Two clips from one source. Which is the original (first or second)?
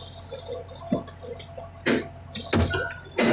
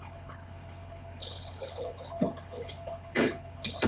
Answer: first